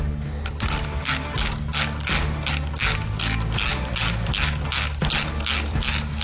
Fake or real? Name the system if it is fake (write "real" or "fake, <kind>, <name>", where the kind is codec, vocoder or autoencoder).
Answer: real